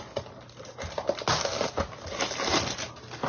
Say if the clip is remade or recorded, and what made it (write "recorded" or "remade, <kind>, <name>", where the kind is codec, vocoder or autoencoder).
recorded